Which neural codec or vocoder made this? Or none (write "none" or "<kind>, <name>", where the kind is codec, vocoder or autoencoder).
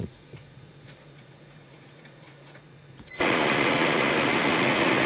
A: vocoder, Vocos